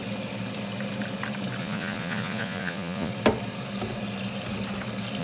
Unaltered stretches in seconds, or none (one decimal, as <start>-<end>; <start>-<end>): 0.0-1.6; 3.1-5.2